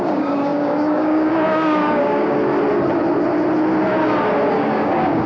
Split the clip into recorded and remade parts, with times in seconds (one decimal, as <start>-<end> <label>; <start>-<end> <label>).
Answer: 0.0-2.4 remade; 2.4-4.5 recorded; 4.5-5.3 remade